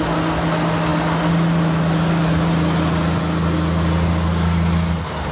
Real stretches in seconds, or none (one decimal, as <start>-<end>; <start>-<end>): 0.0-5.3